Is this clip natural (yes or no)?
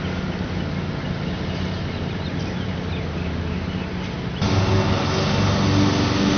yes